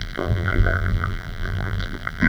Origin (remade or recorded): remade